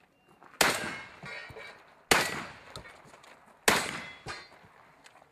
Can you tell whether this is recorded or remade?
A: recorded